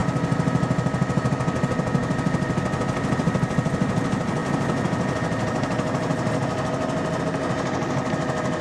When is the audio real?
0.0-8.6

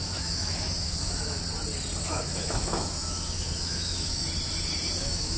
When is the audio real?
1.4-2.0; 4.2-5.0

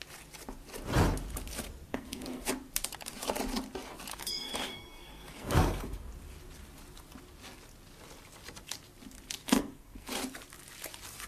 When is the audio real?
0.0-1.9; 2.5-4.1; 6.1-9.4; 10.1-11.3

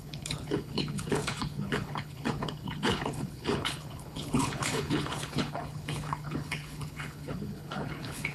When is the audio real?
none

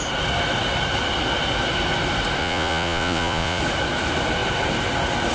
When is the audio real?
0.0-2.4; 3.6-5.3

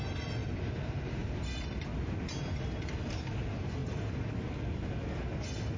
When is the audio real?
0.0-0.4; 1.3-1.9; 2.9-5.8

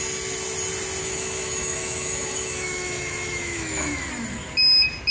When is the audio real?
0.0-1.0; 4.1-5.1

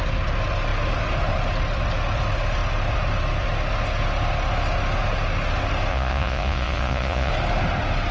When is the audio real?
0.0-5.9; 7.3-8.1